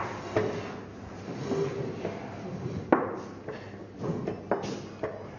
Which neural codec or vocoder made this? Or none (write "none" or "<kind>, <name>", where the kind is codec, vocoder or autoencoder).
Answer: none